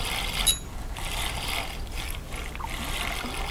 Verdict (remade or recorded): recorded